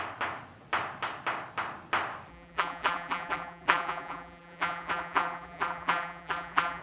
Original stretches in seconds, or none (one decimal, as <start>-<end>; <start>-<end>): 0.0-2.3